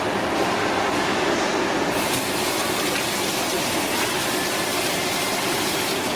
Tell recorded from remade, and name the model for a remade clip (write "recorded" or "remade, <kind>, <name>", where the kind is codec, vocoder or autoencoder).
recorded